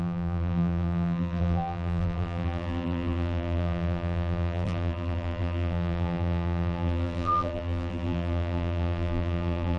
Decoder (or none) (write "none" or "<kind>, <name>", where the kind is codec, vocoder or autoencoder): vocoder, BigVGAN v2